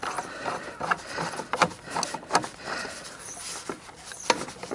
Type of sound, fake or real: real